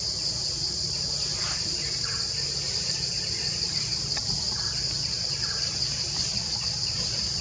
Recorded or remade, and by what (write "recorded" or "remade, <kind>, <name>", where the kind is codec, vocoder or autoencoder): recorded